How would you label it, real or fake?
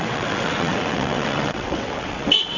fake